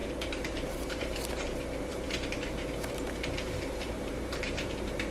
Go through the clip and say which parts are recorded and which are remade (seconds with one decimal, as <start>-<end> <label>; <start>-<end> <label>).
0.0-5.1 remade